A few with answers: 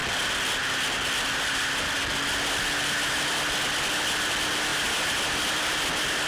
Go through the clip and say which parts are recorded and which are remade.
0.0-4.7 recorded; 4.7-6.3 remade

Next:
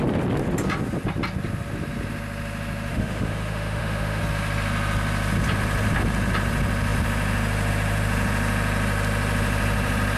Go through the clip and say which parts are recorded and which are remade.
0.0-2.9 recorded; 2.9-4.2 remade; 4.2-10.2 recorded

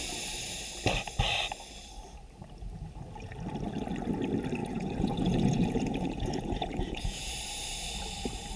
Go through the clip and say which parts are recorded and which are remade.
0.0-4.6 recorded; 4.6-7.3 remade; 7.3-8.6 recorded

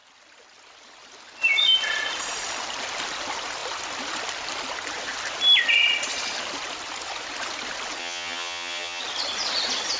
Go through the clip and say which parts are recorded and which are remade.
0.0-8.0 recorded; 8.0-9.0 remade; 9.0-10.0 recorded

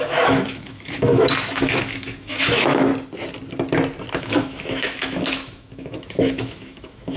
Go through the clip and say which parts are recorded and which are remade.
0.0-2.9 remade; 2.9-4.2 recorded; 4.2-7.2 remade

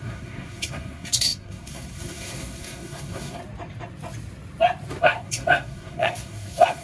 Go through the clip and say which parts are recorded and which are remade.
0.0-3.4 remade; 3.4-5.0 recorded; 5.0-6.8 remade